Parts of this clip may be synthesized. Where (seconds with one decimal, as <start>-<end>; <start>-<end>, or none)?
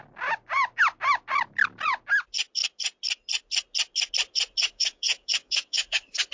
4.6-6.3